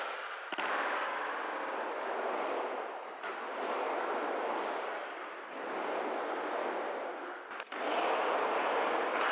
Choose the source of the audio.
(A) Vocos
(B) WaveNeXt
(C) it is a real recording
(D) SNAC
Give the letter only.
C